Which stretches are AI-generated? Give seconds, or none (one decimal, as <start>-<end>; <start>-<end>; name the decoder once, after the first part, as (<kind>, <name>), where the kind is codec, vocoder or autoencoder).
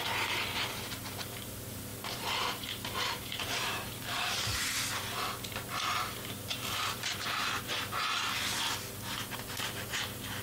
none